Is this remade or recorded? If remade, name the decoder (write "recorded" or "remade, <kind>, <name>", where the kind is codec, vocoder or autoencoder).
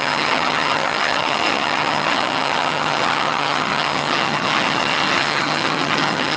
remade, vocoder, HiFi-GAN